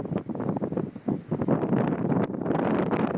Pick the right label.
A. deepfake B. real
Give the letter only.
B